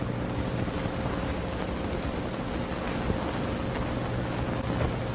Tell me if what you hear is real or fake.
real